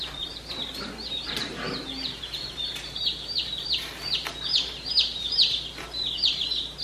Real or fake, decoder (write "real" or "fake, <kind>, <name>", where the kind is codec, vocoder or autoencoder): fake, vocoder, BigVGAN v2